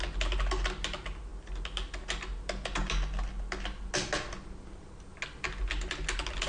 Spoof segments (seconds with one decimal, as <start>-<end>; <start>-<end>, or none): none